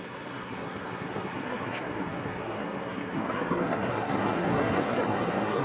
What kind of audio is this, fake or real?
fake